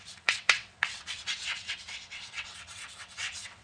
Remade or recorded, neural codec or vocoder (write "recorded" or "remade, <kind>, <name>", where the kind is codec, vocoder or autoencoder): remade, vocoder, WaveNeXt